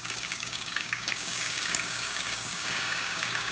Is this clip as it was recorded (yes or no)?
no